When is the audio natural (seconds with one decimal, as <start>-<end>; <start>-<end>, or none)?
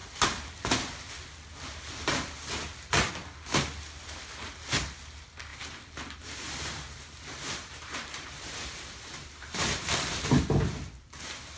0.0-5.5; 10.4-11.6